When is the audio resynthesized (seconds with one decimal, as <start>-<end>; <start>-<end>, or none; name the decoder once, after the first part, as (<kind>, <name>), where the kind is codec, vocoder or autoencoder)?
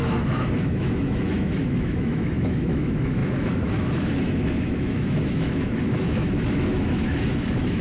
0.0-7.8 (autoencoder, DAC-VAE)